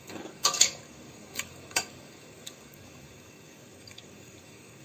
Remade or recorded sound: remade